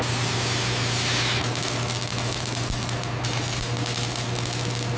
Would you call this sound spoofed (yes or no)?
no